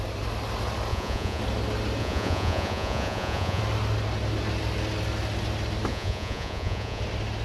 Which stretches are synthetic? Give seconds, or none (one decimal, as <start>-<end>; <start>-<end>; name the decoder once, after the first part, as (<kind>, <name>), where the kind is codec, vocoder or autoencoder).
0.9-1.4 (vocoder, Vocos); 2.0-3.6; 5.9-7.0